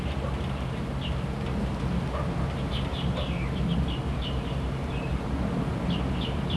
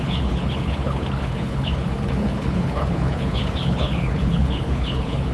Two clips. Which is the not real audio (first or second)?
second